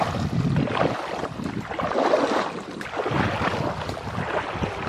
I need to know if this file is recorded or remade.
recorded